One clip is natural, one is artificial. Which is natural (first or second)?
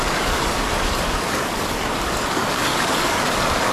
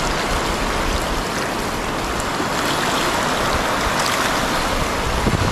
second